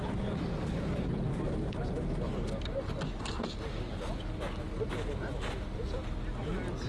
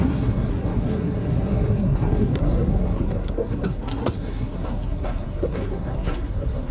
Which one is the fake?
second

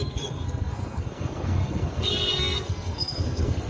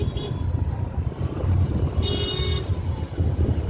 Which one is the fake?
first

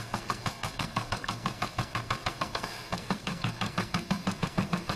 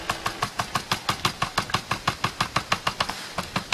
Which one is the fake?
first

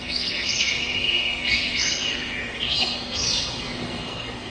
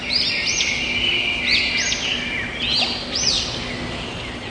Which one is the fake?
first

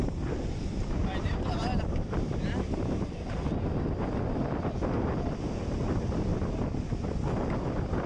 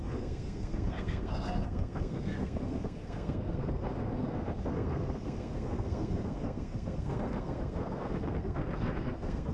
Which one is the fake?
second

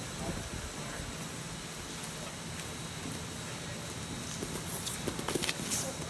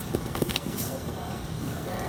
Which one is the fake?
second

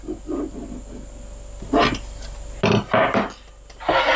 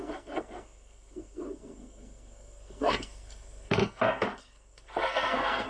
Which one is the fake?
second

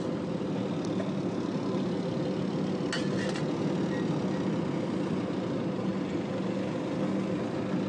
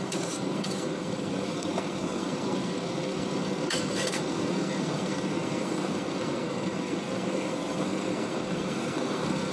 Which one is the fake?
second